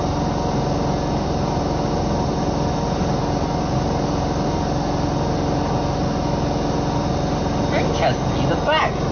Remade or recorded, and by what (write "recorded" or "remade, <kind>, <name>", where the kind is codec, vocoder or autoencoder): recorded